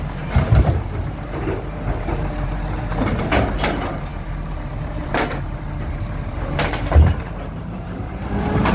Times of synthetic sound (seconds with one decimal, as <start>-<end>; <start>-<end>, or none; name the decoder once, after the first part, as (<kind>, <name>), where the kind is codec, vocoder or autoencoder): 0.0-8.7 (vocoder, BigVGAN v2)